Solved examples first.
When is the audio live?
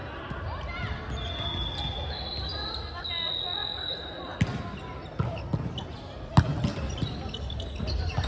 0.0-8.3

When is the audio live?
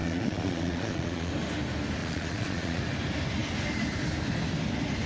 1.3-2.0; 2.8-5.1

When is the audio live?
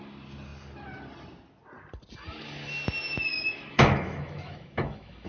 0.0-3.3